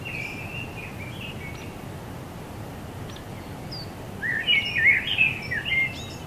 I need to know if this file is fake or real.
real